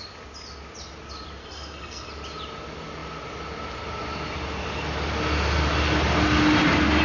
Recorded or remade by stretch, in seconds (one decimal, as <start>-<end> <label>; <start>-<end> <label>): 0.0-1.4 recorded; 1.4-2.1 remade; 2.1-7.0 recorded